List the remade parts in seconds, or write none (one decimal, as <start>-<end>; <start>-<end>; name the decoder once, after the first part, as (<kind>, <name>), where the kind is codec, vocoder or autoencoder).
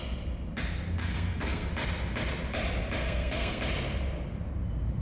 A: 1.0-1.7 (codec, SNAC); 3.0-3.6